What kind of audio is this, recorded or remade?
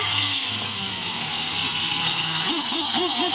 remade